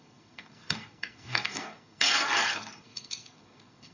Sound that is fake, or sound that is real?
fake